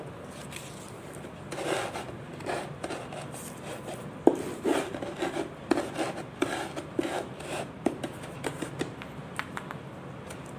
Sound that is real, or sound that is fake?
fake